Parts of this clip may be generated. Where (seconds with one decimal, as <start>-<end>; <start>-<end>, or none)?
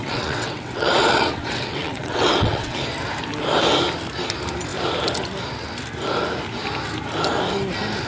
0.0-2.8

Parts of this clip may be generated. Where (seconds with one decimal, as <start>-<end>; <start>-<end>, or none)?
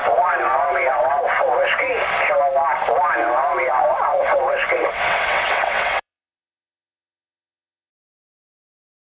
0.0-1.9; 3.2-7.9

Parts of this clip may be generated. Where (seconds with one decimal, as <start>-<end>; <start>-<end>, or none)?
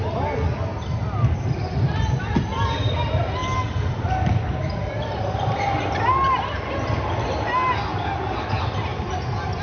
none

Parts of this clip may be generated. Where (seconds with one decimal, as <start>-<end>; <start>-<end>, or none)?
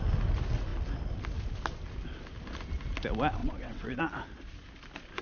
3.4-4.0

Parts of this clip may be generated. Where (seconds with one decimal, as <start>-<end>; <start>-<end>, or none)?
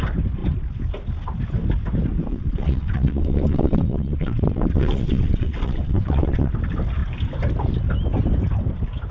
2.3-6.5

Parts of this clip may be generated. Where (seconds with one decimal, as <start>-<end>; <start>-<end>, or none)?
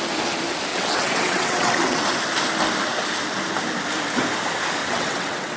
0.7-2.1; 4.8-5.6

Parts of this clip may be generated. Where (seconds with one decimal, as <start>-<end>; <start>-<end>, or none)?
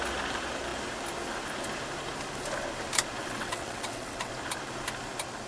3.2-4.3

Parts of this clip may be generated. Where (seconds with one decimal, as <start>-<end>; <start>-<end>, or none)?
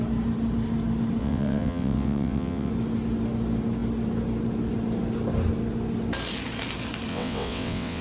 1.2-2.7; 7.1-8.0